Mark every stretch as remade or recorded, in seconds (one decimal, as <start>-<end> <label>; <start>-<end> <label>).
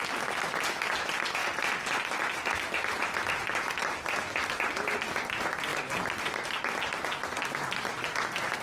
0.0-5.7 recorded; 5.7-6.5 remade; 6.5-8.6 recorded